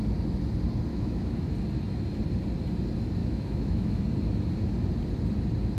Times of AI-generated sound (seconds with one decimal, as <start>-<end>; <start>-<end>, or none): 0.9-1.5; 3.2-4.0